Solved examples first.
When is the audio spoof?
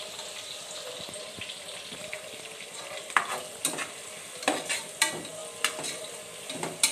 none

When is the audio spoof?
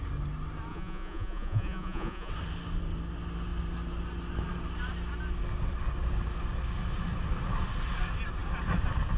0.7-2.3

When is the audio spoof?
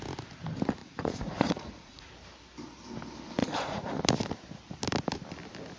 0.8-2.1; 3.4-4.0